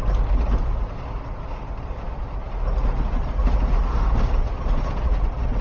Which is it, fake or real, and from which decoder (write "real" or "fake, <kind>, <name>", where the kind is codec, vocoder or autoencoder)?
real